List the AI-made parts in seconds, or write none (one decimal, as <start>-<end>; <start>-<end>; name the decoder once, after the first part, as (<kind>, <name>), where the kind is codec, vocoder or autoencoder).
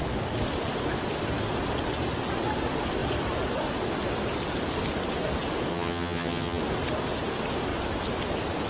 5.7-6.6 (vocoder, HiFi-GAN)